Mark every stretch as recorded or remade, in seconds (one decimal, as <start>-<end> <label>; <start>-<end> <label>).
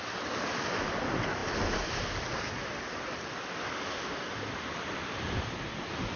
0.0-6.2 recorded